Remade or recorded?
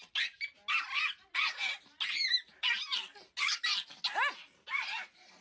recorded